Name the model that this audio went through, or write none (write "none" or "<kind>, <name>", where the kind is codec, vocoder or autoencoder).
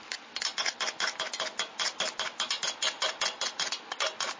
none